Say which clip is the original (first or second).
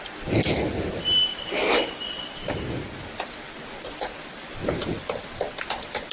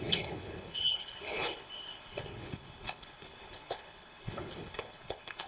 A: first